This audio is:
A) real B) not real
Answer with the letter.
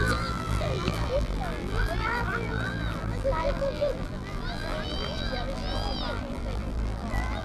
B